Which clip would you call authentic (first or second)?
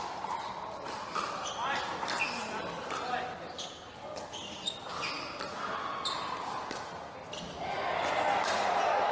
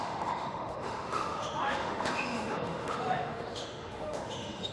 first